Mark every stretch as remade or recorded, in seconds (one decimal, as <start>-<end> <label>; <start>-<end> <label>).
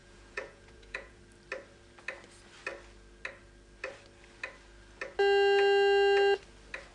0.0-1.2 remade; 1.2-6.9 recorded